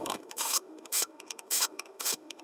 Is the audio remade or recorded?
remade